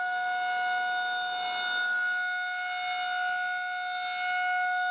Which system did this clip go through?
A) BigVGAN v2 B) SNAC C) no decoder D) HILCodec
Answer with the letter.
C